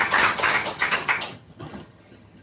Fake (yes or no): yes